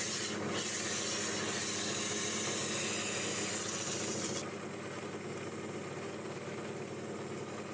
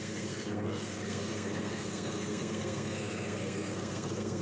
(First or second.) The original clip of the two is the first